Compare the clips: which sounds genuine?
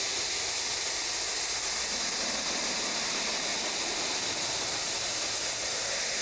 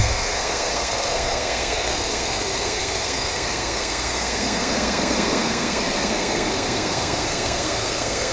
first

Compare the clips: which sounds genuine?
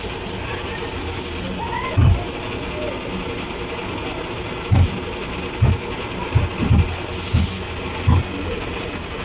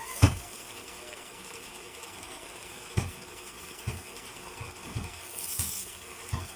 first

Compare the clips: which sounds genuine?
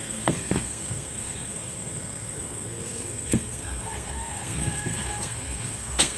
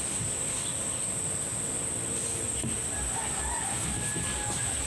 second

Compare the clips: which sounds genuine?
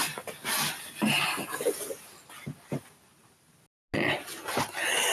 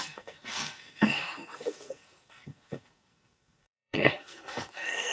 first